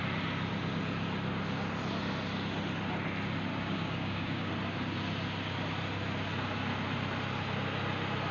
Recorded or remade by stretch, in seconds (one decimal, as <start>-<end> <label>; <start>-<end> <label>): 0.0-3.5 recorded; 3.5-4.5 remade; 4.5-8.3 recorded